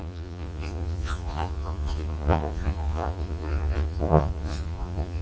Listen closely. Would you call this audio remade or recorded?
remade